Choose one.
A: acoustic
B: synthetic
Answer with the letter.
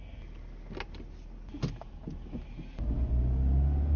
A